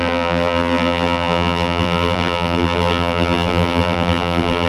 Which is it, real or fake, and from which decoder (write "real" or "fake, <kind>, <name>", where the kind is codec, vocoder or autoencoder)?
fake, vocoder, BigVGAN v2